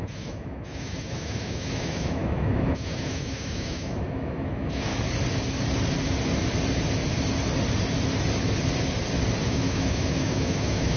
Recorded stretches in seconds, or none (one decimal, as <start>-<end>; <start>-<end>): 4.9-9.4